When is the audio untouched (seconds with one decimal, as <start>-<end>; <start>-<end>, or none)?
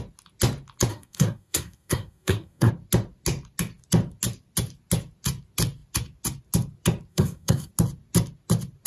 0.0-0.9; 2.7-7.1; 7.7-8.9